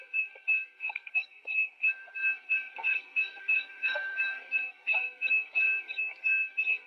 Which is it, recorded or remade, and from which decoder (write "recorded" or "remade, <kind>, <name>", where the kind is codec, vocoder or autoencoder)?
remade, codec, SNAC